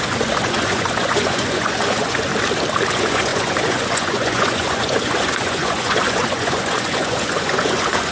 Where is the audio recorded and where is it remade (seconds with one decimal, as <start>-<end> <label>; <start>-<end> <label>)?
0.0-2.3 remade; 2.3-2.9 recorded; 2.9-8.1 remade